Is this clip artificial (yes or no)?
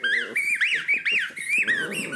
no